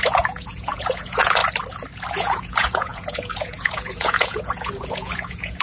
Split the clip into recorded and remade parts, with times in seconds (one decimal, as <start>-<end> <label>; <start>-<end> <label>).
0.0-1.4 remade; 1.4-2.1 recorded; 2.1-5.6 remade